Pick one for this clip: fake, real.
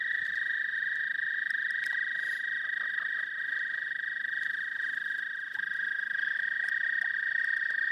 real